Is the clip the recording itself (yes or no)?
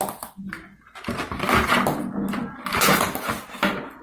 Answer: yes